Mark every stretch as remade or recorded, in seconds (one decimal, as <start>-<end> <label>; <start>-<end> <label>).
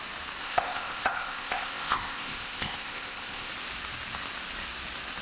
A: 0.0-0.4 recorded; 0.4-3.5 remade; 3.5-5.2 recorded